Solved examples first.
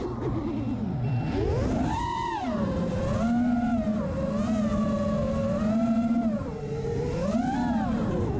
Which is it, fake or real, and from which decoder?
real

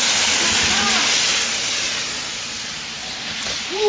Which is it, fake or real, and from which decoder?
real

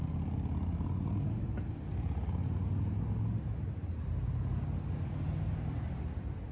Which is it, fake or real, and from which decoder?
real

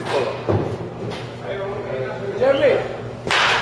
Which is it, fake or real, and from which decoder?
real